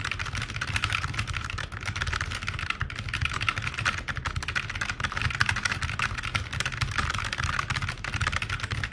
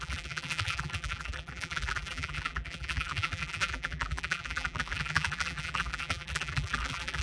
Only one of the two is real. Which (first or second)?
first